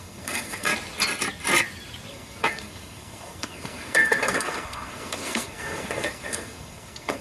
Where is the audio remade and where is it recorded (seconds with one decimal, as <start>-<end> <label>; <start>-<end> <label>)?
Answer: 0.0-0.7 remade; 0.7-2.1 recorded; 2.1-7.2 remade